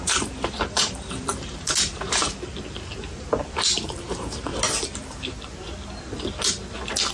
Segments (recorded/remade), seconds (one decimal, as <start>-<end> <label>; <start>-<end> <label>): 0.0-4.5 remade; 4.5-7.1 recorded